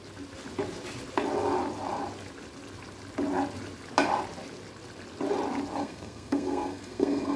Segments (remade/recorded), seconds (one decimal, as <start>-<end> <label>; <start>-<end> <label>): 0.0-5.8 recorded; 5.8-7.4 remade